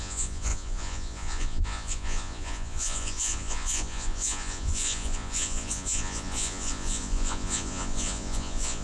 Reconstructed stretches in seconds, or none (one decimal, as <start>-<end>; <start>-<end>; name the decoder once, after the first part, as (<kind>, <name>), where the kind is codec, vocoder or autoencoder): 0.0-8.8 (vocoder, Vocos)